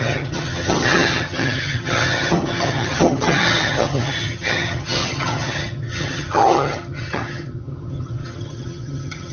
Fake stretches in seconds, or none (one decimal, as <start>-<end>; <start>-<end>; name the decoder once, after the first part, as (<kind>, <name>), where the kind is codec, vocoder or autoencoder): 0.0-9.3 (vocoder, HiFi-GAN)

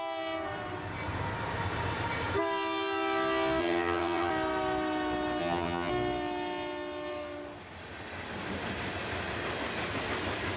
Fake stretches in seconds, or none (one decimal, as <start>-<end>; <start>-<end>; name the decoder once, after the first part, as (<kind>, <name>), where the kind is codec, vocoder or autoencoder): 3.6-4.3 (vocoder, HiFi-GAN); 5.4-5.9

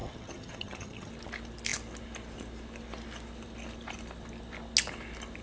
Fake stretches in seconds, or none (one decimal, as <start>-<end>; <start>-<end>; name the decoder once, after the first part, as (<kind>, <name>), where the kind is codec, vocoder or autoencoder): 0.0-1.1 (vocoder, HiFi-GAN)

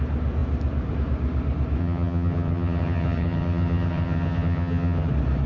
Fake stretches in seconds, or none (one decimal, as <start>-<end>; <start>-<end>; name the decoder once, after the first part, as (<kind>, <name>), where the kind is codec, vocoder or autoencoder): 1.8-5.1 (vocoder, HiFi-GAN)